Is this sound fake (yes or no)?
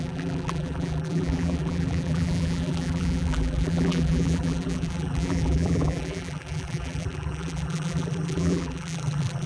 yes